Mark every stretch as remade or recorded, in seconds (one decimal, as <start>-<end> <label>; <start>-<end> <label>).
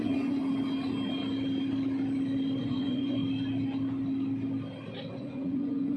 0.0-0.4 remade; 0.4-2.6 recorded; 2.6-3.2 remade; 3.2-5.1 recorded; 5.1-6.0 remade